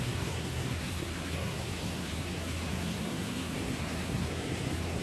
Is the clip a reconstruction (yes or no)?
yes